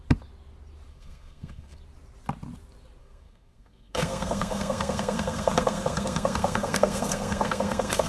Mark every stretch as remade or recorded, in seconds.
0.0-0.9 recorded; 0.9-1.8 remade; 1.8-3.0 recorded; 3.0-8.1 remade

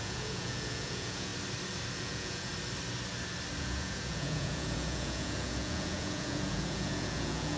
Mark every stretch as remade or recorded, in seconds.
0.0-1.3 remade; 1.3-2.0 recorded; 2.0-2.5 remade; 2.5-3.6 recorded; 3.6-7.6 remade